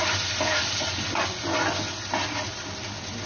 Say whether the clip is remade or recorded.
recorded